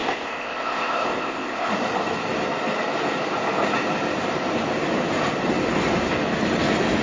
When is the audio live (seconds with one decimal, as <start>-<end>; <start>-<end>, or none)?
1.7-7.0